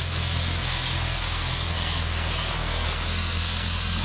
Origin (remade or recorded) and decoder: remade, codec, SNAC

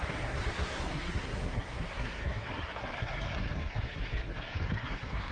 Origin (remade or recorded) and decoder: remade, codec, SNAC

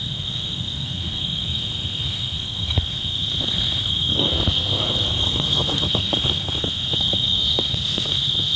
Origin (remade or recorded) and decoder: remade, codec, SNAC